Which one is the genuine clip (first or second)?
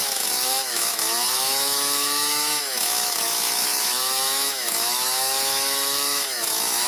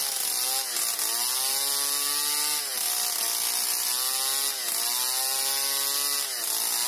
second